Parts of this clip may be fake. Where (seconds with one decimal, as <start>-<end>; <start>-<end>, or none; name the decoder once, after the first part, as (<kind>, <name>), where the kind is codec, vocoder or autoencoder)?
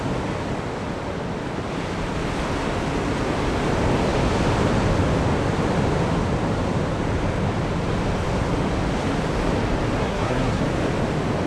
10.0-10.6 (codec, SNAC)